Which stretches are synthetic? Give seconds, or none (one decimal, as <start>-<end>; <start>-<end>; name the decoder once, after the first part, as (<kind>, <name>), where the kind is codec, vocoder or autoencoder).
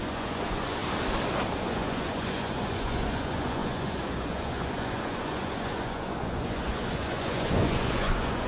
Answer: 0.0-0.8 (vocoder, Vocos); 1.6-8.5